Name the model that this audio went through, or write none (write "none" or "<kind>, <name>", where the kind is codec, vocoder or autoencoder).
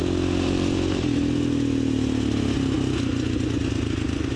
none